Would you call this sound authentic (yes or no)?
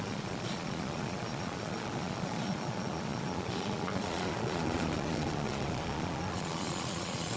no